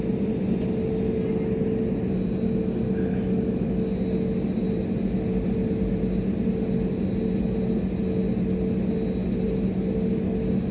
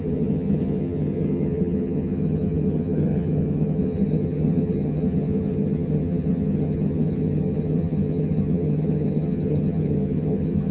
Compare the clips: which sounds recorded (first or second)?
first